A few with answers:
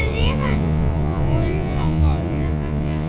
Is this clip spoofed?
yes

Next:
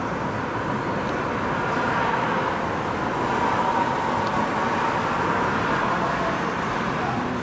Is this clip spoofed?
no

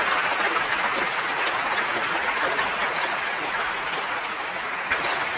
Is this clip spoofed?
yes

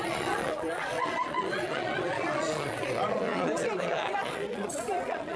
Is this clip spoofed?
yes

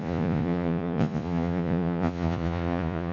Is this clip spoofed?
yes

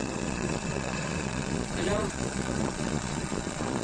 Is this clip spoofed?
yes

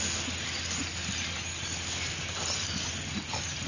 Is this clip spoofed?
no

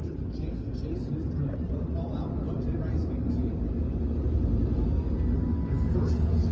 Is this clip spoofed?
no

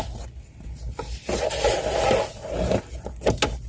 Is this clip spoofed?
no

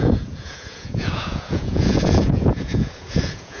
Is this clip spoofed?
yes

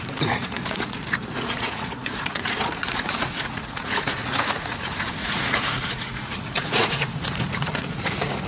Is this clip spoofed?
yes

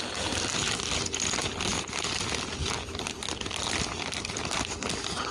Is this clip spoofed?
no